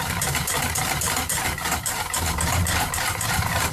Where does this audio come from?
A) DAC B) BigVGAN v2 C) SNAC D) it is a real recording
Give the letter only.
B